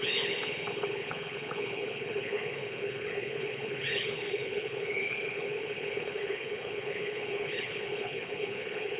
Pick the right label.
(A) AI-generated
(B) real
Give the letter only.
A